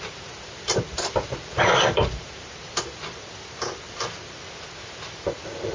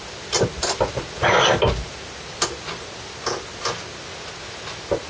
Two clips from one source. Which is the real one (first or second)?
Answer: second